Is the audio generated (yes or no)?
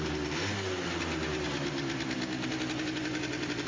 no